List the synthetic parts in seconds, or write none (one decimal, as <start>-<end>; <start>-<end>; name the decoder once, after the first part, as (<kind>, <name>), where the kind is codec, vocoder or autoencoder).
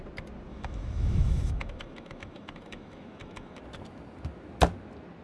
0.5-3.6 (autoencoder, DAC-VAE)